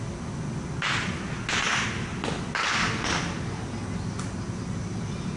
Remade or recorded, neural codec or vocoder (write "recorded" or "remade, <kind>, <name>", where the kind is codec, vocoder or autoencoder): recorded